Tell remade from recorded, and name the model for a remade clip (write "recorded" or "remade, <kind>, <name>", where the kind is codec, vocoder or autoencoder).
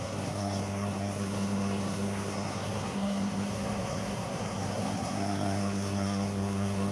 remade, codec, SNAC